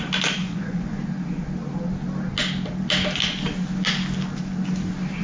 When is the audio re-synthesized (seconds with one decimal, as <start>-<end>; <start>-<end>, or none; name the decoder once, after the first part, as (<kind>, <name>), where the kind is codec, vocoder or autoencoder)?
0.4-1.0 (vocoder, Vocos)

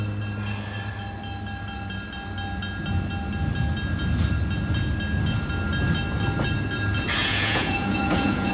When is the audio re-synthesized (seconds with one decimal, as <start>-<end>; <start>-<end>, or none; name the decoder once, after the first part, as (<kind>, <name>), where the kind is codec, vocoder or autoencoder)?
7.2-8.5 (vocoder, Vocos)

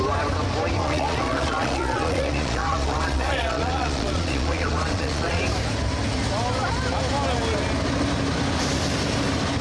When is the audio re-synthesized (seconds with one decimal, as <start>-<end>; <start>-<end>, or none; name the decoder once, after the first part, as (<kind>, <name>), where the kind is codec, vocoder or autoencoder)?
0.8-5.4 (vocoder, Vocos)

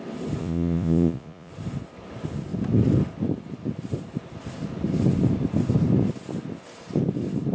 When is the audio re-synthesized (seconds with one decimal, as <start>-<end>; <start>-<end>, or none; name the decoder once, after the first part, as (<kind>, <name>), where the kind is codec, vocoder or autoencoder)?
0.4-1.5 (vocoder, Vocos)

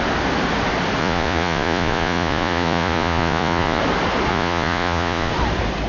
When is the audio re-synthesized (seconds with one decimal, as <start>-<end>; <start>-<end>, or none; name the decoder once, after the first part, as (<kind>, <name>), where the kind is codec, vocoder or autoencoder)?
1.0-3.8 (vocoder, Vocos); 4.3-5.3

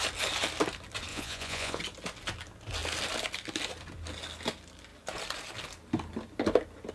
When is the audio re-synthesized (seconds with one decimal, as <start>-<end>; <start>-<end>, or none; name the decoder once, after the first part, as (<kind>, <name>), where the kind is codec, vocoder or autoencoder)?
1.1-1.8 (vocoder, Vocos)

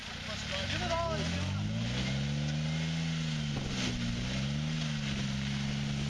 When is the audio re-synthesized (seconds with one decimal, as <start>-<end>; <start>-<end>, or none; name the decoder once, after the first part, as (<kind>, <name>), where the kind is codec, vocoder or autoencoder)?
none